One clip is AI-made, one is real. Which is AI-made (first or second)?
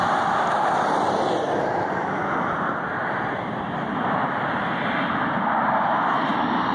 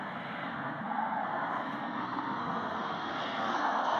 second